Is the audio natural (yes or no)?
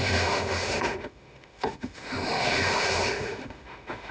no